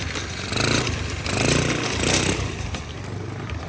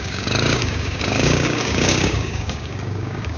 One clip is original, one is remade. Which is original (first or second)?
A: first